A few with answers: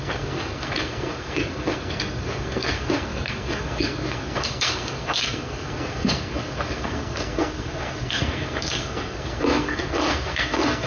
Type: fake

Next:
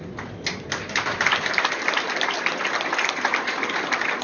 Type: real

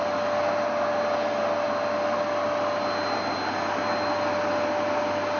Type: real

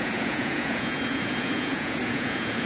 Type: fake